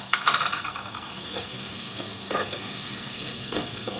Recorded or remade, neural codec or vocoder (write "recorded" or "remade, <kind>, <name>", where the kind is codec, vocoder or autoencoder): remade, codec, SNAC